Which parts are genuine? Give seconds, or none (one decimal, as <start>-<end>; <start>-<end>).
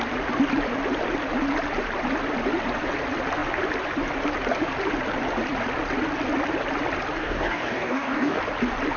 0.0-7.2; 8.4-9.0